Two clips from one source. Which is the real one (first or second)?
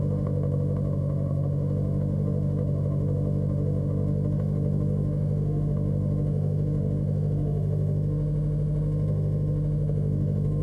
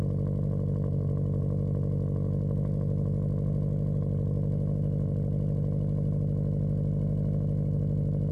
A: second